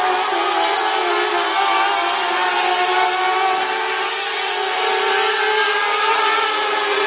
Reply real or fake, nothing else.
real